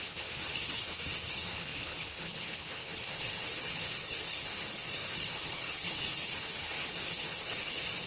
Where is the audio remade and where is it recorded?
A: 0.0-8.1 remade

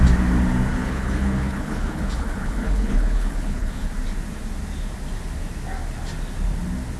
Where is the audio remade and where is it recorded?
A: 0.0-0.7 recorded; 0.7-3.9 remade; 3.9-7.0 recorded

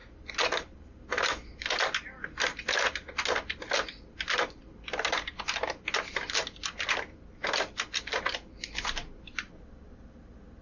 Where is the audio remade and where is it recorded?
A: 0.0-10.6 recorded

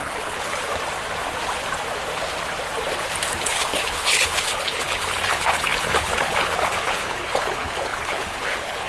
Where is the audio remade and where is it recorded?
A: 0.0-0.7 remade; 0.7-3.4 recorded; 3.4-8.9 remade

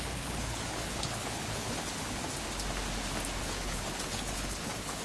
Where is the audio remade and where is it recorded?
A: 0.0-2.2 remade; 2.2-3.4 recorded; 3.4-5.0 remade

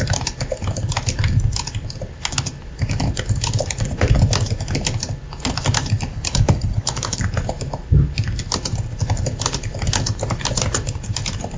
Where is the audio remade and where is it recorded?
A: 0.0-6.1 recorded; 6.1-7.2 remade; 7.2-11.6 recorded